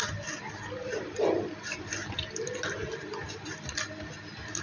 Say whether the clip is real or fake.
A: real